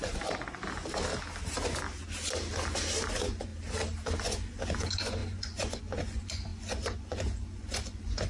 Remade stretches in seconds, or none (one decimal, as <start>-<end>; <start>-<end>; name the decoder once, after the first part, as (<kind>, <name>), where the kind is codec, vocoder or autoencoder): 0.0-0.6 (vocoder, Vocos); 3.1-3.5; 4.2-8.3